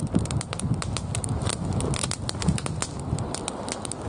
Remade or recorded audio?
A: recorded